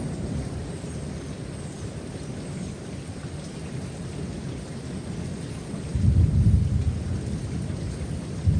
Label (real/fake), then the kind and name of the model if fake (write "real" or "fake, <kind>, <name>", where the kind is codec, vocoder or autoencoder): real